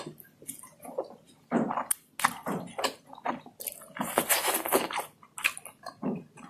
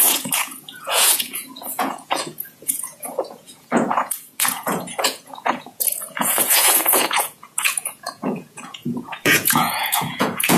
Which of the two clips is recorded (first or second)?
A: first